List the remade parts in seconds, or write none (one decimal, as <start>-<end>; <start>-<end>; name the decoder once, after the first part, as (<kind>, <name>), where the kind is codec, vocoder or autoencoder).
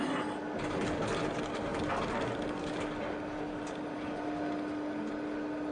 none